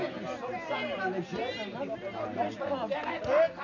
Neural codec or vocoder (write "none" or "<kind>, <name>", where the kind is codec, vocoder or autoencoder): none